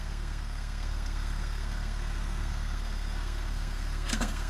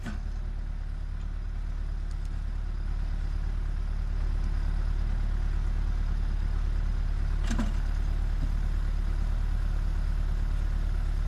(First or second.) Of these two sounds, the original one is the second